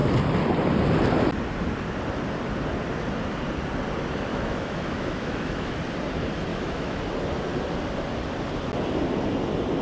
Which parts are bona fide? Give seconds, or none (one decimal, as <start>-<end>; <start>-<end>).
0.0-4.3; 5.8-6.5; 7.0-9.8